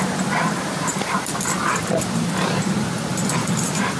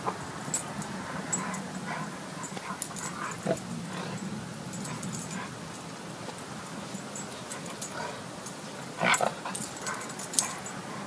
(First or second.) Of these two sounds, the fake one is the first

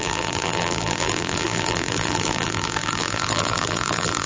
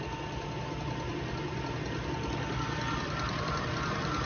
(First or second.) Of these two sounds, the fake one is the first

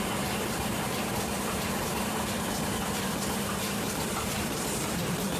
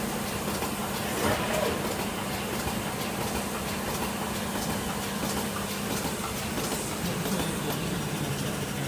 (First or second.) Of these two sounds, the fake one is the first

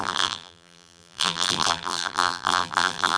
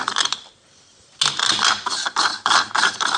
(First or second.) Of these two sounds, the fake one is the first